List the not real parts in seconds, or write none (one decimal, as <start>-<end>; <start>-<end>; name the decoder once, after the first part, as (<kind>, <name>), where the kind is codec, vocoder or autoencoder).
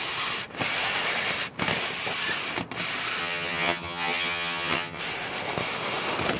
3.2-5.0 (vocoder, HiFi-GAN)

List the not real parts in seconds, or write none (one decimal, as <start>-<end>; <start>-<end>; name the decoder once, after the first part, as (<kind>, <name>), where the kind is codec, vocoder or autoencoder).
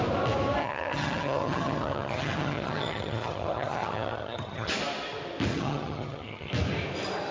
0.6-4.7 (vocoder, HiFi-GAN); 5.5-6.5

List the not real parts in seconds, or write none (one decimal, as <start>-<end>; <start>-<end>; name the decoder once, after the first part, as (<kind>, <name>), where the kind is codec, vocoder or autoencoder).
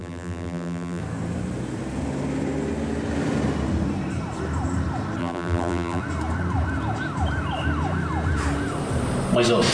0.0-1.0 (vocoder, BigVGAN v2); 5.2-6.0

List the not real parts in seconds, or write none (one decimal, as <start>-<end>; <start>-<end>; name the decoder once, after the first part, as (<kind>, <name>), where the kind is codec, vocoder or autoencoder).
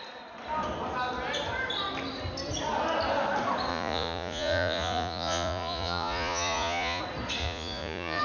3.7-7.0 (vocoder, Vocos); 7.4-8.2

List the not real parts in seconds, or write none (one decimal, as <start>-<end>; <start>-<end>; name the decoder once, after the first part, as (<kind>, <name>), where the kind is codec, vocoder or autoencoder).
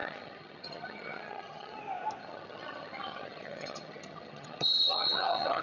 0.0-1.8 (vocoder, HiFi-GAN); 2.2-5.6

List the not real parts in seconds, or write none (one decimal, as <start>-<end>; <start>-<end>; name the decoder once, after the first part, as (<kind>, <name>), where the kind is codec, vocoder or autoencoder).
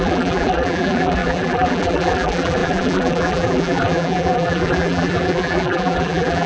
0.0-6.5 (vocoder, BigVGAN v2)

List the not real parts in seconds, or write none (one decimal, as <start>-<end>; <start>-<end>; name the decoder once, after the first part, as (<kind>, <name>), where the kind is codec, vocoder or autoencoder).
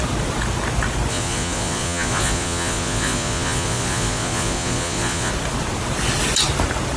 1.1-5.3 (vocoder, Vocos)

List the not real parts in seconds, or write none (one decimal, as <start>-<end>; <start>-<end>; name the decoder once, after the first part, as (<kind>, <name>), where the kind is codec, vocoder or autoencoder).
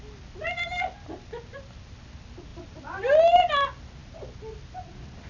none